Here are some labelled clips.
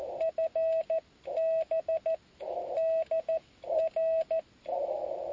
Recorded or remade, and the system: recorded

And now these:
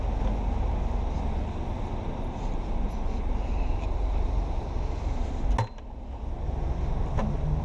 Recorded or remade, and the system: recorded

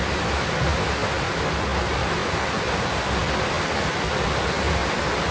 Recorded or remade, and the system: recorded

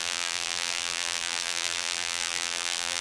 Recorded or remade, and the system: remade, vocoder, BigVGAN v2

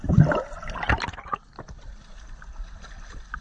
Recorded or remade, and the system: recorded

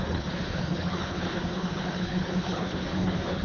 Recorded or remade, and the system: remade, codec, HILCodec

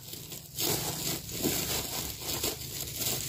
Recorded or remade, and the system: recorded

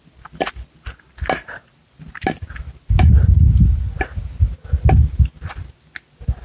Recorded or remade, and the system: recorded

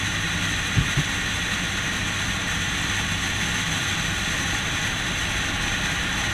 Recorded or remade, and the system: recorded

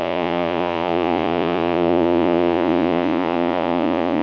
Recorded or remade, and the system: remade, vocoder, Vocos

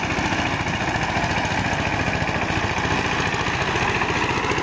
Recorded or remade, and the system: recorded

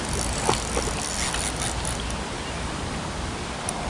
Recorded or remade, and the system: recorded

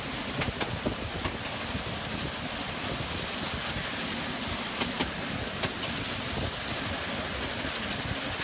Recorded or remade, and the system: recorded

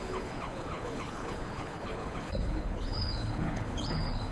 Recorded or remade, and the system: remade, codec, HILCodec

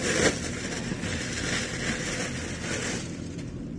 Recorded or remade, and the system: recorded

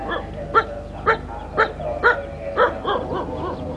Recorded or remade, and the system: recorded